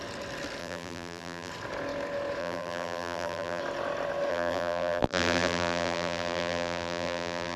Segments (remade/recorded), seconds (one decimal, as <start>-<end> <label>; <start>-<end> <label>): 0.0-0.6 recorded; 0.6-1.5 remade; 1.5-2.4 recorded; 2.4-3.6 remade; 3.6-4.3 recorded; 4.3-7.6 remade